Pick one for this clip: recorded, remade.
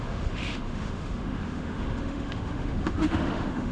remade